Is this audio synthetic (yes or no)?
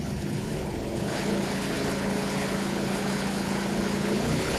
yes